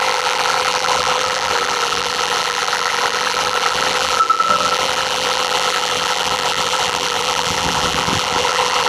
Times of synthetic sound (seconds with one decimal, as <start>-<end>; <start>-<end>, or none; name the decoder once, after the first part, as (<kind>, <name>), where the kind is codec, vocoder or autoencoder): 0.0-8.9 (vocoder, BigVGAN v2)